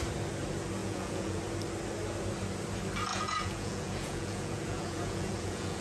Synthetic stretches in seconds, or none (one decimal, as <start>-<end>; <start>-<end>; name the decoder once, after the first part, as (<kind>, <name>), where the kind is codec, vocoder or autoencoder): 0.8-1.4 (vocoder, Vocos); 3.1-5.8